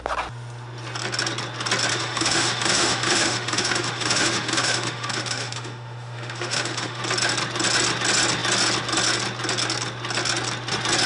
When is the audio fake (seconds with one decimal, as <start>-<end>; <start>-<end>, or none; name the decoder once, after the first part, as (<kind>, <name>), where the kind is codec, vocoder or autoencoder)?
1.9-7.0 (autoencoder, DAC-VAE)